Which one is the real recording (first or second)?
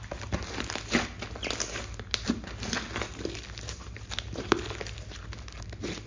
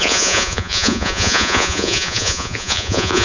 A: first